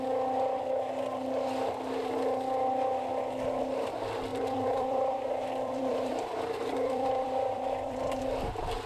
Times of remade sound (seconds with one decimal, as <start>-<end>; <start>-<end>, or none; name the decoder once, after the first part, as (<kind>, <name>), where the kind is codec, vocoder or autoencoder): 4.3-8.2 (vocoder, BigVGAN v2)